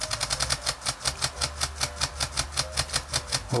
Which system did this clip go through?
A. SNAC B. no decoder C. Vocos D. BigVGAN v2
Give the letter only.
B